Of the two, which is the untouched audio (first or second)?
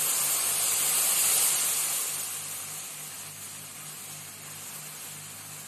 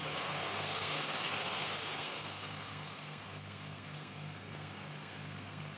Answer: first